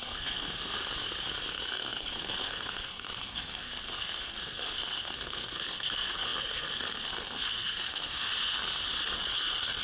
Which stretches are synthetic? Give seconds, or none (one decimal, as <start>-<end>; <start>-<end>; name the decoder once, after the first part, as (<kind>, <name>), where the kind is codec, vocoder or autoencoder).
0.0-0.8 (codec, SNAC); 1.5-8.3